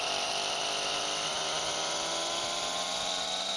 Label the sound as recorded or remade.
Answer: recorded